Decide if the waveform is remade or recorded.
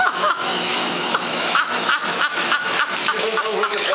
remade